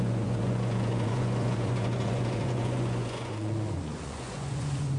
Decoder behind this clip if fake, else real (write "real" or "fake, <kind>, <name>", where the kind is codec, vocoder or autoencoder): fake, vocoder, Vocos